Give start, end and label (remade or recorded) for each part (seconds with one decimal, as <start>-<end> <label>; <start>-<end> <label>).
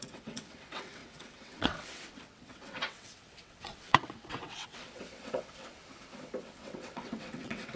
0.0-5.8 remade; 5.8-6.4 recorded; 6.4-7.8 remade